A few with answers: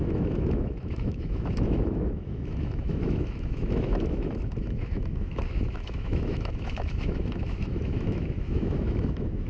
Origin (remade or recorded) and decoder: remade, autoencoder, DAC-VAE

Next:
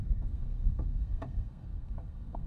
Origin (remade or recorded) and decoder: remade, codec, SNAC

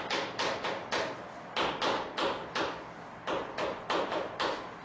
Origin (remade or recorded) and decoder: recorded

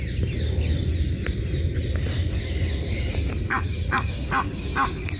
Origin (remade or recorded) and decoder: recorded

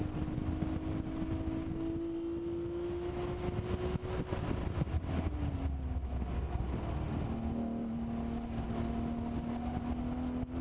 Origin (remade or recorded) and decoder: recorded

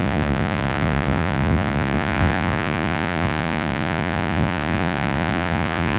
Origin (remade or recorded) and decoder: remade, vocoder, Vocos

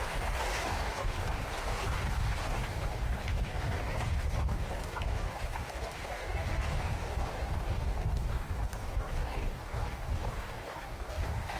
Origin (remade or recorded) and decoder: remade, codec, DAC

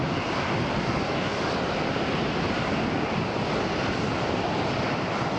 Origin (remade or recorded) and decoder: recorded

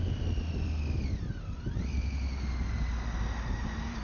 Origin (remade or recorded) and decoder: recorded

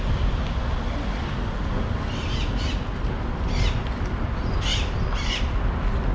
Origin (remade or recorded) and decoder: recorded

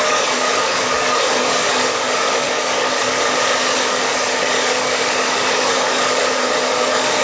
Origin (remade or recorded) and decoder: remade, codec, DAC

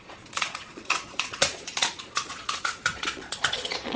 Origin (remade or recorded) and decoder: remade, vocoder, Vocos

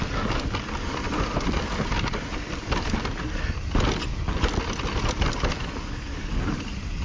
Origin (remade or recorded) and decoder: recorded